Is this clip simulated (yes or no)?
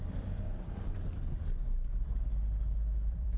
yes